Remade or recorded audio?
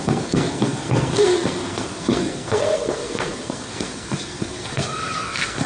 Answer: remade